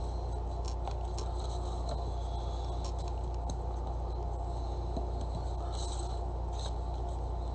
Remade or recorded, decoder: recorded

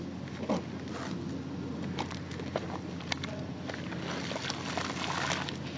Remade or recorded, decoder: recorded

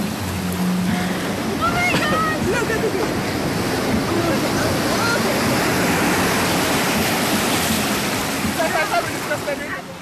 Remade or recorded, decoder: recorded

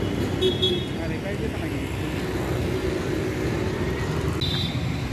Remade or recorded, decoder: recorded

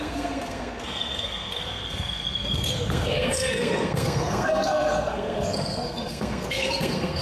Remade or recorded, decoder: remade, codec, SNAC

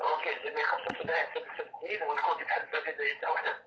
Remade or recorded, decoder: remade, vocoder, Vocos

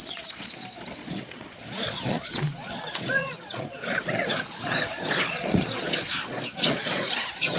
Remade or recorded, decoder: remade, vocoder, Vocos